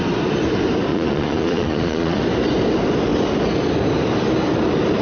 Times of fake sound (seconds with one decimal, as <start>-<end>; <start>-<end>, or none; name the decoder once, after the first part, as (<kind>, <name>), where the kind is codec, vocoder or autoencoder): 0.9-2.2 (vocoder, Vocos)